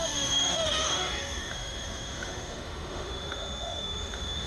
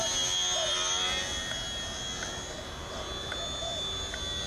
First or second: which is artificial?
first